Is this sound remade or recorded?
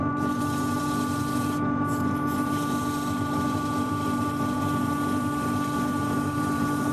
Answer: remade